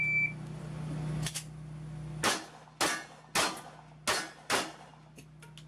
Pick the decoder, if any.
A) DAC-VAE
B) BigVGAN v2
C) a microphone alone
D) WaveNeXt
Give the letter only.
C